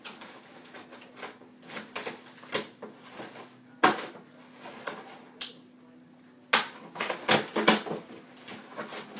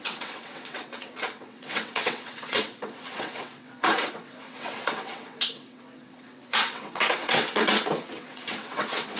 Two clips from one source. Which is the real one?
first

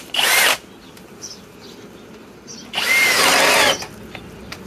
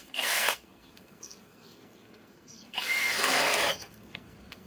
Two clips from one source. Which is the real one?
first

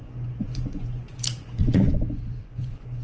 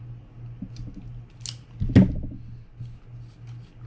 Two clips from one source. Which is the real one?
second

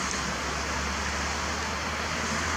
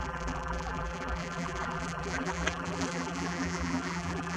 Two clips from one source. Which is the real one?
first